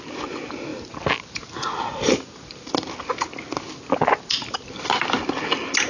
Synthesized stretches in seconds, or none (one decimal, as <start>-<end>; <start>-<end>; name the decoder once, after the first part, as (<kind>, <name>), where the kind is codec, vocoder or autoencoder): none